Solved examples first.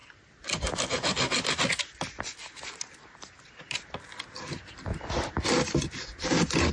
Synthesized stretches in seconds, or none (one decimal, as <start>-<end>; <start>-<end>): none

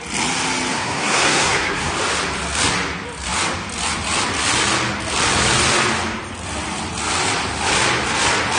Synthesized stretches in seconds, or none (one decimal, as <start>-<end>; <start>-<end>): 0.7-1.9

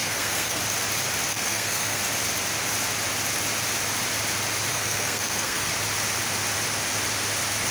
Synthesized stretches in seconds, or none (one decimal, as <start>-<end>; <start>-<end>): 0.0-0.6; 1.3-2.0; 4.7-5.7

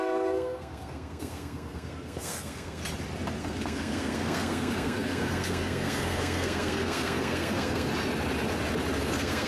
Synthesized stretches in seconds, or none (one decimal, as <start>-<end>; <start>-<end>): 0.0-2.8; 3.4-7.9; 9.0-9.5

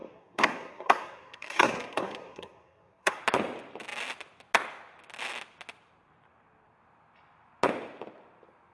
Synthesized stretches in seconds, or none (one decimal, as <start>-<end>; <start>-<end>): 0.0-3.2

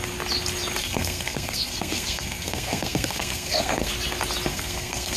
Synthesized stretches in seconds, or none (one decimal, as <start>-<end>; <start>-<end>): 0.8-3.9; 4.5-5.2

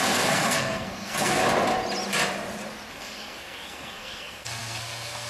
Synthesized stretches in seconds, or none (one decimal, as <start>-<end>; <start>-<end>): 0.0-1.4; 2.9-5.3